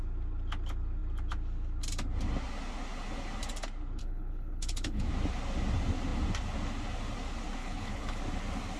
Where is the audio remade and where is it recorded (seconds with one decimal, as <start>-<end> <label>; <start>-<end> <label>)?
0.0-4.0 recorded; 4.0-5.1 remade; 5.1-7.6 recorded; 7.6-8.2 remade; 8.2-8.8 recorded